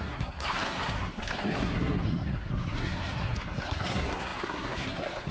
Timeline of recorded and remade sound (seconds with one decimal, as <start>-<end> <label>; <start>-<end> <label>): 0.0-5.3 remade